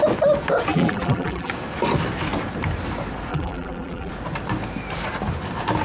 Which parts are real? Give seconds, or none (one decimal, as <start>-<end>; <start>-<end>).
0.0-0.7; 1.5-3.3; 4.1-5.8